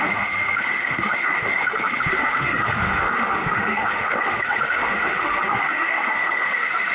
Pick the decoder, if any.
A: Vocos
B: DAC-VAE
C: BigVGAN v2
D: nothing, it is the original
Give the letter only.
B